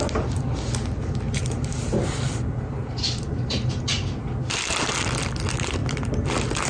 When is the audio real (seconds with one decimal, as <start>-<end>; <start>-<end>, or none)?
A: 0.0-1.4; 3.7-6.7